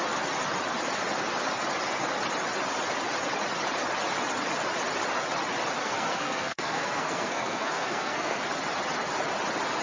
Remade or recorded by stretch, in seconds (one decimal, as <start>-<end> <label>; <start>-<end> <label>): 0.0-5.8 recorded; 5.8-8.4 remade; 8.4-9.8 recorded